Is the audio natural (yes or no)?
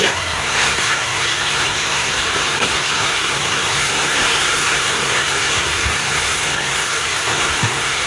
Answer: no